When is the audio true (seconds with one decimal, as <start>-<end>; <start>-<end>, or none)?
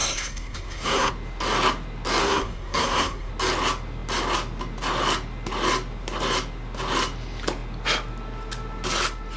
1.1-2.2; 3.3-9.4